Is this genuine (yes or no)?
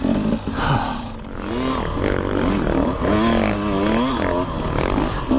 yes